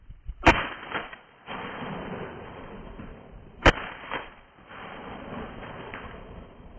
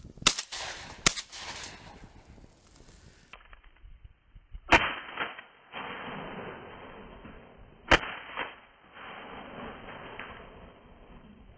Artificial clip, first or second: first